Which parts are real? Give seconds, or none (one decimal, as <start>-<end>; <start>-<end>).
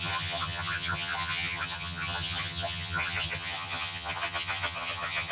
none